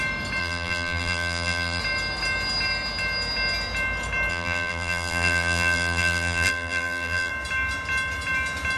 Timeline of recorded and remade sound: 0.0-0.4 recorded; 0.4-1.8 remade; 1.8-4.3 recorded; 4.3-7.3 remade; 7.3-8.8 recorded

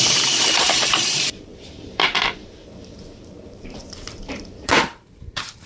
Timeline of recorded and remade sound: 0.0-5.7 remade